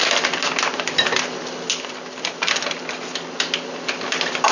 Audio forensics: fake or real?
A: real